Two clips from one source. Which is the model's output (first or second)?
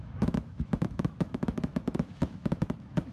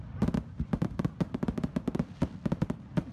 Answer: first